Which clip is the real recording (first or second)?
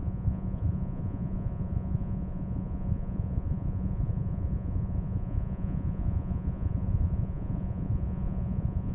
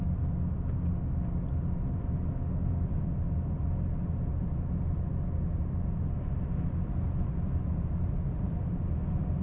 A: second